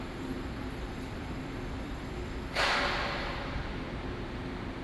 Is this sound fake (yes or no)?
yes